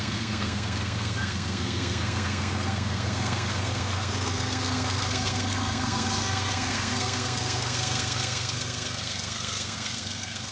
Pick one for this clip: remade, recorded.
remade